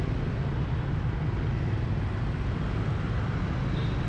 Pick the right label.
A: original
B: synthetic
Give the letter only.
A